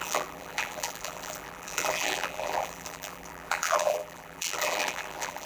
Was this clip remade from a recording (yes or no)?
yes